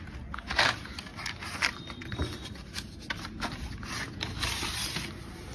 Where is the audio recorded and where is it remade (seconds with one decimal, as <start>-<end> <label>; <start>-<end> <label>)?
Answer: 0.0-5.5 recorded